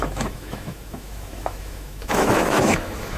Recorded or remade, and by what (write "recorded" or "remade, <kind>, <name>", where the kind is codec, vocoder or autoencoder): remade, autoencoder, DAC-VAE